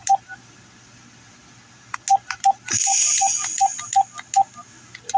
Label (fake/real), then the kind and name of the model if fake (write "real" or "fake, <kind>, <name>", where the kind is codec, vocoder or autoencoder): real